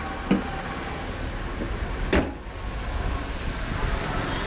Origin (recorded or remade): recorded